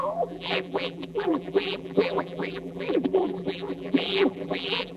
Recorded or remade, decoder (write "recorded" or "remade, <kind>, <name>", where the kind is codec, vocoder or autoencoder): remade, vocoder, BigVGAN v2